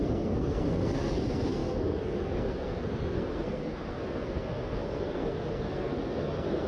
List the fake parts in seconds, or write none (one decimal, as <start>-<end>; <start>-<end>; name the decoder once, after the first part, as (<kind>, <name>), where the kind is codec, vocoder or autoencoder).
0.0-6.7 (codec, SNAC)